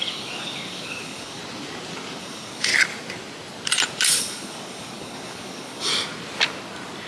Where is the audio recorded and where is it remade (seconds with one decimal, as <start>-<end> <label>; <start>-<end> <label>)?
0.0-1.4 remade; 1.4-2.2 recorded; 2.2-2.7 remade; 2.7-4.2 recorded; 4.2-5.9 remade; 5.9-7.1 recorded